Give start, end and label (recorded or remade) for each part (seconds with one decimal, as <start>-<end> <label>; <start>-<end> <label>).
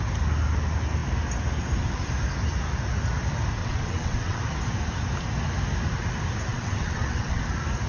0.0-3.6 recorded; 3.6-4.4 remade; 4.4-6.5 recorded; 6.5-7.4 remade; 7.4-7.9 recorded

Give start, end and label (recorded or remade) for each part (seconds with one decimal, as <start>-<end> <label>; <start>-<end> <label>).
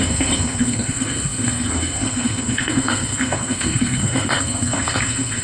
0.0-5.4 remade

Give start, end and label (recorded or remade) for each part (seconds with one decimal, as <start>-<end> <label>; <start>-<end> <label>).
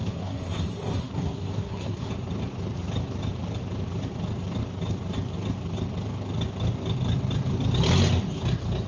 0.0-2.1 remade; 2.1-8.9 recorded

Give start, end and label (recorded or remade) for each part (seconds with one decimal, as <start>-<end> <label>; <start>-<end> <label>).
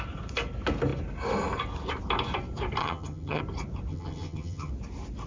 0.0-2.8 recorded; 2.8-3.4 remade; 3.4-3.9 recorded; 3.9-4.7 remade; 4.7-5.3 recorded